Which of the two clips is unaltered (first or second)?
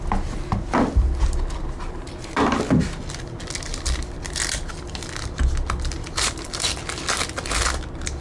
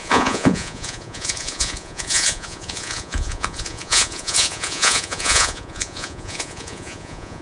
first